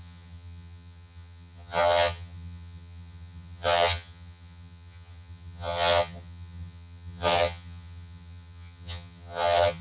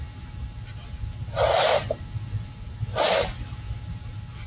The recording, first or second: second